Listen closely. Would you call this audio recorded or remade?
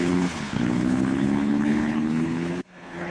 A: remade